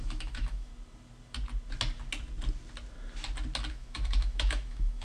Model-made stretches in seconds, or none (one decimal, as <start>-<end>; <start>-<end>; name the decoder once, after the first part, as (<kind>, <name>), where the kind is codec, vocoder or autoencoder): 0.0-0.7 (autoencoder, DAC-VAE); 3.7-5.0

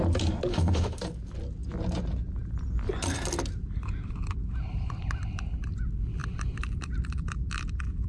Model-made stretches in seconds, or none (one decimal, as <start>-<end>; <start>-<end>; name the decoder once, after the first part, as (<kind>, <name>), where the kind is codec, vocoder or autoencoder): 0.5-1.0 (autoencoder, DAC-VAE)